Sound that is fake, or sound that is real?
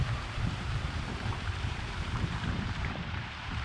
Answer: fake